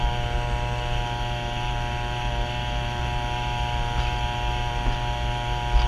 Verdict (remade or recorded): recorded